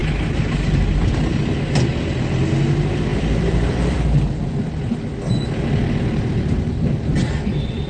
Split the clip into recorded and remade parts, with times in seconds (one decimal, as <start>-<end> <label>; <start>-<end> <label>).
0.0-3.1 recorded; 3.1-3.8 remade; 3.8-7.9 recorded